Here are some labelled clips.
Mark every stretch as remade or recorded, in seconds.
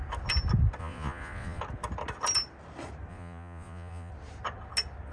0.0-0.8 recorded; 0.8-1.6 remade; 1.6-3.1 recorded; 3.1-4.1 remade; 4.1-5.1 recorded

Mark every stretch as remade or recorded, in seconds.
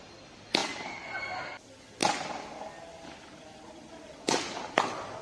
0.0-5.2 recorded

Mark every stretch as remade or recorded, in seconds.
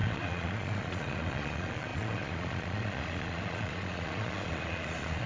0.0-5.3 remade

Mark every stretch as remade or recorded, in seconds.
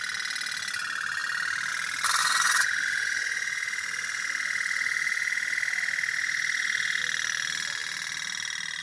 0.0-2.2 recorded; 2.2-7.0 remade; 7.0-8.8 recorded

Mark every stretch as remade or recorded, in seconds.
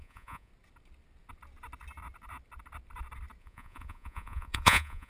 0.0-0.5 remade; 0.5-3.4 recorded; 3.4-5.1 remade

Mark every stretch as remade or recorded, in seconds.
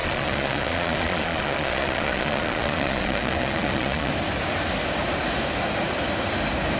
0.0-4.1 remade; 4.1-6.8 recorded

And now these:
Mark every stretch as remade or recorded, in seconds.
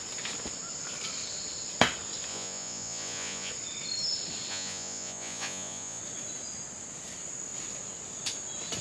0.0-2.3 recorded; 2.3-3.5 remade; 3.5-4.5 recorded; 4.5-6.0 remade; 6.0-8.8 recorded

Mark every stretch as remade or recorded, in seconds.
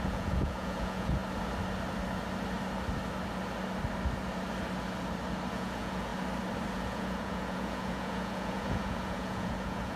0.0-1.2 remade; 1.2-5.5 recorded; 5.5-6.1 remade; 6.1-6.7 recorded; 6.7-10.0 remade